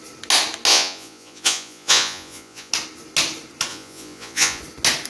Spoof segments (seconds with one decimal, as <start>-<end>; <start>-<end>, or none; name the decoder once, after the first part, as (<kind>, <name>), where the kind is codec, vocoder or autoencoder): 0.7-2.7 (vocoder, Vocos); 3.7-4.6